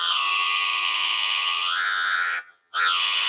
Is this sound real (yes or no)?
no